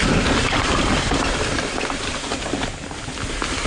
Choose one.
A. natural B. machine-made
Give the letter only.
A